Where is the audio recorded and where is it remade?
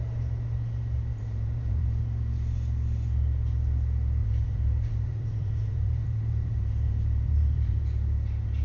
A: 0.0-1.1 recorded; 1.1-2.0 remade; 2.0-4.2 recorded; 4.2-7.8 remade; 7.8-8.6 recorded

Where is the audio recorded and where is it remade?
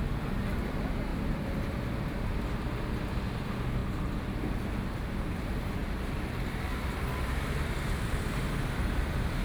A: 0.0-1.1 recorded; 1.1-1.6 remade; 1.6-3.8 recorded; 3.8-4.4 remade; 4.4-5.8 recorded; 5.8-9.4 remade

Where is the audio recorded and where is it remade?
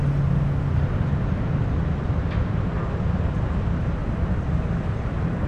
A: 0.0-4.0 recorded; 4.0-4.5 remade; 4.5-5.5 recorded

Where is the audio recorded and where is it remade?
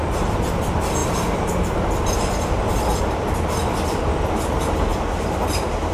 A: 0.0-4.9 recorded; 4.9-5.9 remade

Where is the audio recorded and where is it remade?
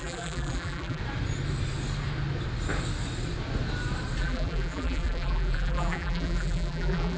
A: 0.0-1.0 remade; 1.0-4.2 recorded; 4.2-7.2 remade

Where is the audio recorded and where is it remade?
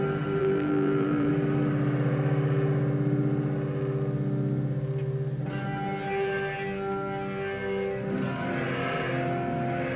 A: 0.0-0.4 recorded; 0.4-1.3 remade; 1.3-10.0 recorded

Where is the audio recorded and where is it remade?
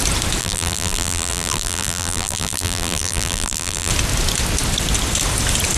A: 0.0-0.4 recorded; 0.4-3.9 remade; 3.9-5.8 recorded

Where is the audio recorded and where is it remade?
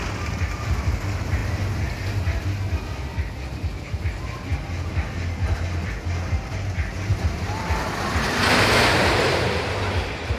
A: 0.0-7.1 recorded; 7.1-9.6 remade; 9.6-10.4 recorded